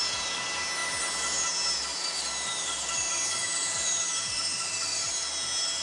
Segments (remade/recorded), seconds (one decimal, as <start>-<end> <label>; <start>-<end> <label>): 0.0-3.6 recorded; 3.6-5.1 remade; 5.1-5.8 recorded